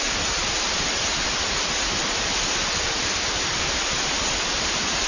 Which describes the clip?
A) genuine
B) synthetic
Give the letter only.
A